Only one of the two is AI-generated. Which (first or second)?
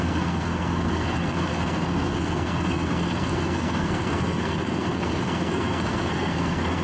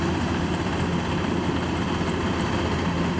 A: first